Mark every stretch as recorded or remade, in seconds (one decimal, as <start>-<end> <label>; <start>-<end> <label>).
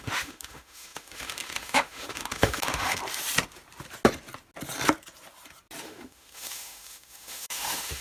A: 0.0-3.0 remade; 3.0-5.8 recorded; 5.8-8.0 remade